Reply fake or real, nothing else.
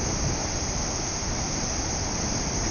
real